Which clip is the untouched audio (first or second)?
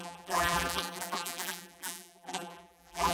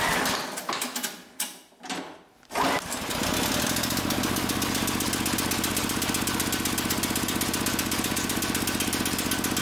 second